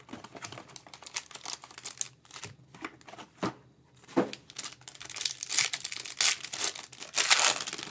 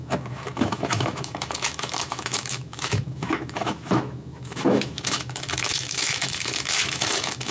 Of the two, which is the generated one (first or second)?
second